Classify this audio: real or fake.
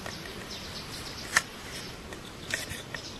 real